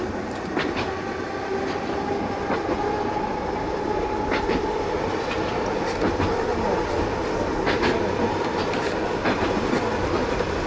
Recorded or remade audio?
recorded